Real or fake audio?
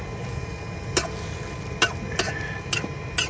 real